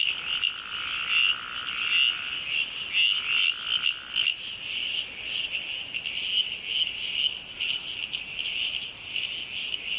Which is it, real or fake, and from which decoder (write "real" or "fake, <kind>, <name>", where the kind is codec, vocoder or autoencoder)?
real